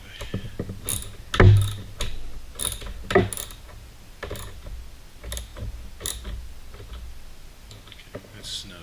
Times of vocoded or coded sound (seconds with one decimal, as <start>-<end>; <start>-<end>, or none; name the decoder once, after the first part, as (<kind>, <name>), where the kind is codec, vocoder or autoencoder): none